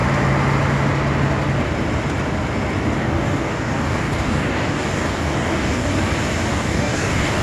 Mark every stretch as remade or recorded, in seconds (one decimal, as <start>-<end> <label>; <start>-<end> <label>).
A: 0.0-3.0 recorded; 3.0-5.9 remade; 5.9-6.5 recorded; 6.5-7.4 remade